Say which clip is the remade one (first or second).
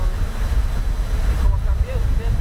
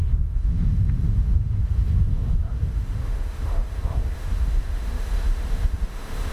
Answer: second